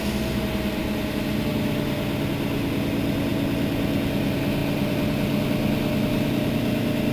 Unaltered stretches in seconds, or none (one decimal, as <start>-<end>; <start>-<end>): 0.0-0.8; 1.5-7.1